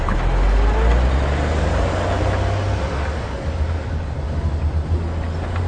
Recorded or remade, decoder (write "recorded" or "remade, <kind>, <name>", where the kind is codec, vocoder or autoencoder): recorded